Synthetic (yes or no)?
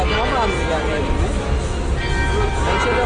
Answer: no